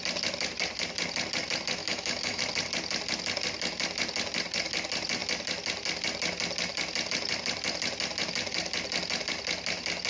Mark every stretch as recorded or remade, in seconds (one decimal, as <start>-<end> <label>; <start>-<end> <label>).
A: 0.0-1.8 recorded; 1.8-2.4 remade; 2.4-10.1 recorded